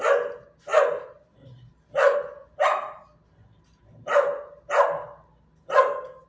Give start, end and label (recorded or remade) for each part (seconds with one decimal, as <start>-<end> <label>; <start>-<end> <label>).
0.0-0.7 recorded; 0.7-1.7 remade; 1.7-6.3 recorded